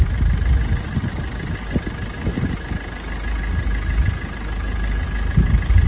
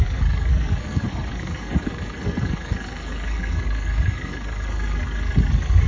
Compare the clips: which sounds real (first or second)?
first